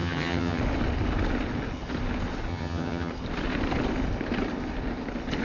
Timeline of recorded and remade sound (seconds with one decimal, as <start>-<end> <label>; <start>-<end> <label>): 0.0-0.6 remade; 0.6-2.5 recorded; 2.5-3.1 remade; 3.1-5.4 recorded